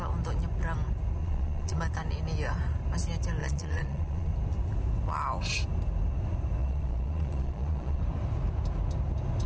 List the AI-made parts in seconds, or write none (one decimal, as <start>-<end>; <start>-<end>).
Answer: 1.2-1.8; 3.4-4.3; 6.6-8.0